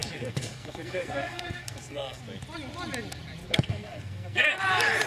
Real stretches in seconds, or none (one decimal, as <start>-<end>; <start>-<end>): 2.2-3.4; 4.6-5.1